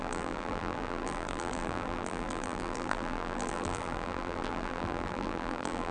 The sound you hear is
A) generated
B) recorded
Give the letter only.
A